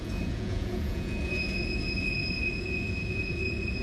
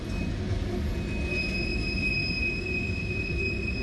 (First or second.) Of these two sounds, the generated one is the first